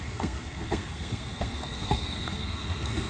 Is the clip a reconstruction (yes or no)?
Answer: yes